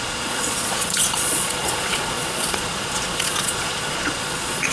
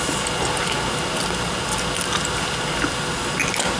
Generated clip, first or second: first